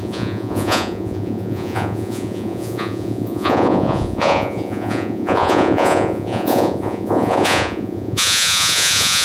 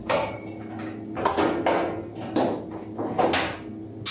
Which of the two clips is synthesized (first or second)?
first